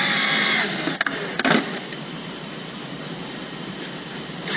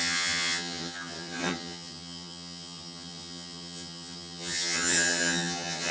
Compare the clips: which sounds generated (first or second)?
second